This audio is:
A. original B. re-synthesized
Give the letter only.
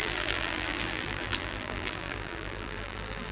B